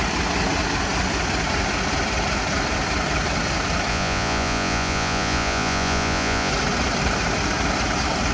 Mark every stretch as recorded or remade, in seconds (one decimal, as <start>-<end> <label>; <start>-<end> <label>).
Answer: 0.0-3.9 recorded; 3.9-6.5 remade; 6.5-8.3 recorded